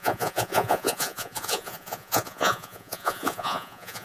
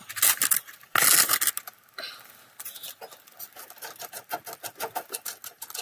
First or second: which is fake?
first